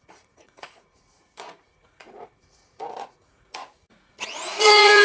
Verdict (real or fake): fake